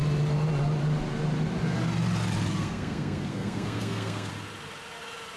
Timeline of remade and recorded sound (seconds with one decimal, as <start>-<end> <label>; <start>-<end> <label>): 0.0-2.6 recorded; 2.6-4.3 remade; 4.3-5.4 recorded

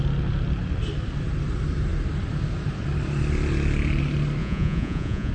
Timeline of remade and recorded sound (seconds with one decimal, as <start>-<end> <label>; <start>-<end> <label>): 0.0-4.4 recorded; 4.4-5.3 remade